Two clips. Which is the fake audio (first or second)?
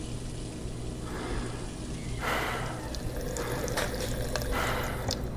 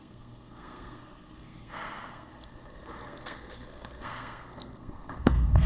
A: second